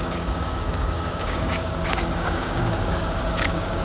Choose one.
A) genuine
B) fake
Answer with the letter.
B